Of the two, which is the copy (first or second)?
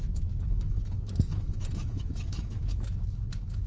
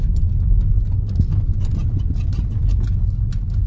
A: first